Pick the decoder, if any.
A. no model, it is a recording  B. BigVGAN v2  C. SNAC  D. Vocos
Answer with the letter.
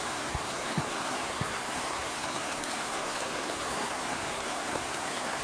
C